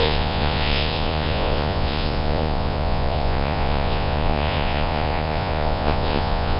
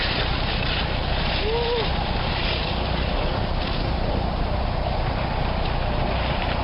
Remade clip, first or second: first